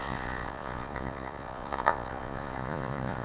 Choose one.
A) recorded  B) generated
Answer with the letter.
B